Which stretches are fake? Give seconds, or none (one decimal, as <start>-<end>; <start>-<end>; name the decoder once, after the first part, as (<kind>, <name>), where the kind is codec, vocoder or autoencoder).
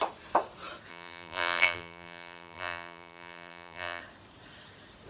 0.9-4.0 (vocoder, BigVGAN v2)